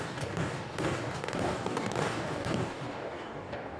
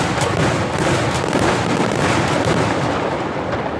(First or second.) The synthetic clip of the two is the first